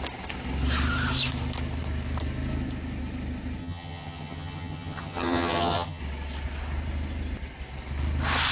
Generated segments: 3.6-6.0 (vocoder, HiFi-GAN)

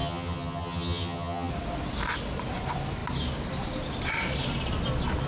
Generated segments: 0.0-1.5 (vocoder, HiFi-GAN)

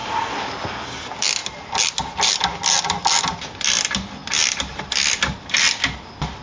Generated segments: none

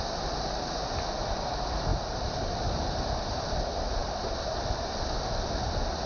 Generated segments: none

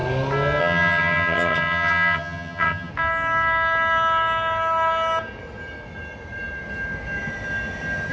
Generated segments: 0.6-2.9 (vocoder, HiFi-GAN)

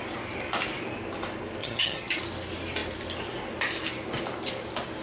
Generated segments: 1.6-2.2 (vocoder, HiFi-GAN)